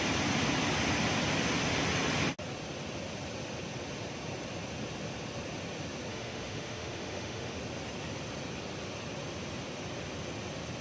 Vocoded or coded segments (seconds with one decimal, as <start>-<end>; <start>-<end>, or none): 6.1-7.6